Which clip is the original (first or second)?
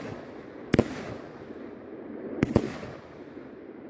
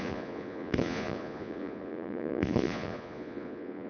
first